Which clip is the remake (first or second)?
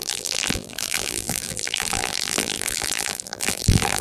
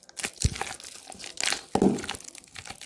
first